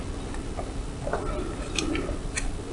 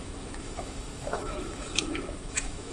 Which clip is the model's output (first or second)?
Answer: second